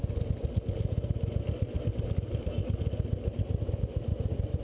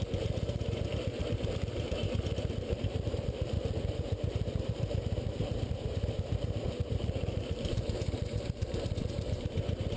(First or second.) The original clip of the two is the first